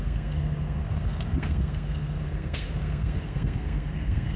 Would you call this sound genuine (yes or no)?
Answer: no